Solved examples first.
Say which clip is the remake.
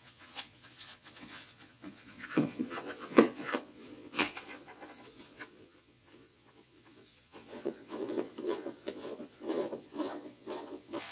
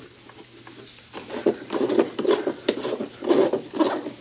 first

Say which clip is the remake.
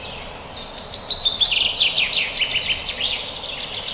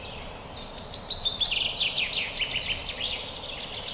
second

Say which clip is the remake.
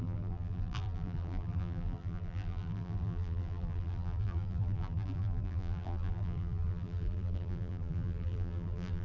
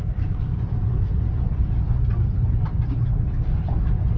first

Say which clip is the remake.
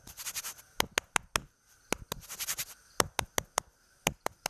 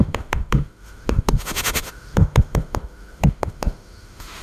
second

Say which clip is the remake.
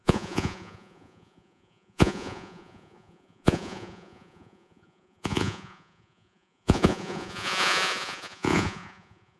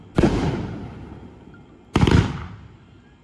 first